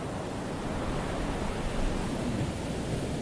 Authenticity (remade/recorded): recorded